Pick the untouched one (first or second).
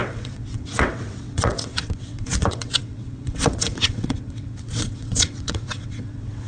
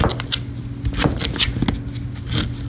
second